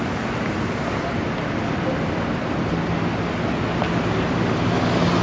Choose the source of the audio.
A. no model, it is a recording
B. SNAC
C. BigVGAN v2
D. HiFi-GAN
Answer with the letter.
A